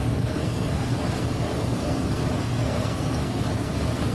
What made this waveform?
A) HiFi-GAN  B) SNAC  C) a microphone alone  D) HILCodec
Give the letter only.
B